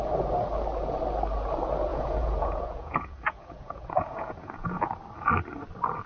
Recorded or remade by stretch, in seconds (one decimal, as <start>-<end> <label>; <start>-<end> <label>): 0.0-1.9 recorded; 1.9-4.9 remade; 4.9-6.1 recorded